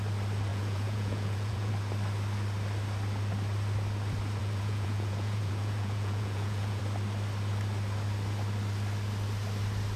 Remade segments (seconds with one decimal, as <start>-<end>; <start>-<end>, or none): 0.5-1.7; 4.4-6.8